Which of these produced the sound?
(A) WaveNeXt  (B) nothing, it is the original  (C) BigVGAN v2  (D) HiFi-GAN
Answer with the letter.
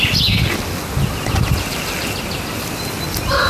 B